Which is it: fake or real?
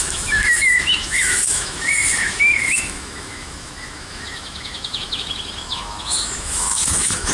fake